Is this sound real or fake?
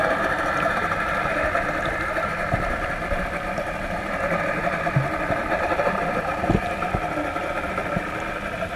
real